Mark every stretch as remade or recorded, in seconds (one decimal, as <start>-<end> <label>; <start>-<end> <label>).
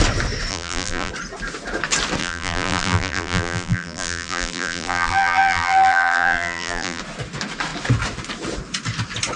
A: 0.0-0.5 recorded; 0.5-1.1 remade; 1.1-2.2 recorded; 2.2-7.0 remade; 7.0-9.4 recorded